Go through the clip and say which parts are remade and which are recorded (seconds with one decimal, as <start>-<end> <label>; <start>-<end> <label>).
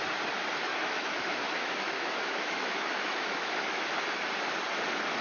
0.0-0.7 recorded; 0.7-3.8 remade; 3.8-5.2 recorded